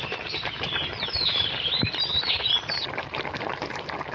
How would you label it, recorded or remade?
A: remade